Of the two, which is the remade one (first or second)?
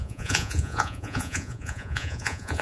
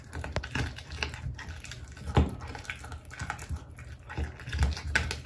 first